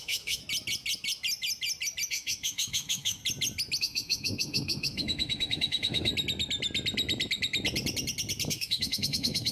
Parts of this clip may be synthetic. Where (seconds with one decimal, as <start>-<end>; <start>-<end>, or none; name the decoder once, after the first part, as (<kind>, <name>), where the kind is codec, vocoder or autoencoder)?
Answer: 0.0-0.4 (autoencoder, DAC-VAE); 2.1-3.2; 3.8-6.1; 8.5-9.5